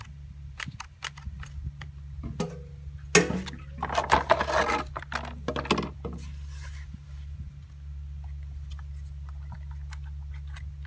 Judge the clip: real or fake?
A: real